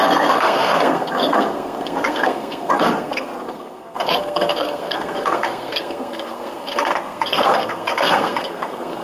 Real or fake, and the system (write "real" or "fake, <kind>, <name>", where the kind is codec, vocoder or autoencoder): fake, codec, SNAC